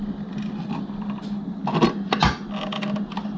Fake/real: real